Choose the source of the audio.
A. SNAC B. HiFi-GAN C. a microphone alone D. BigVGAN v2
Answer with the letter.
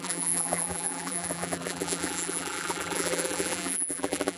D